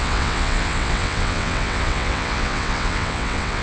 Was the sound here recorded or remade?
remade